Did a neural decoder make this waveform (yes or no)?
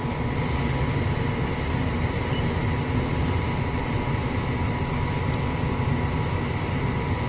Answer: no